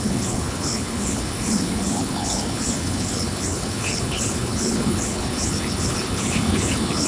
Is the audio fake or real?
fake